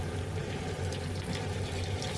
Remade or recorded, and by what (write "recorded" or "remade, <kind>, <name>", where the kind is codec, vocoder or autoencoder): remade, vocoder, BigVGAN v2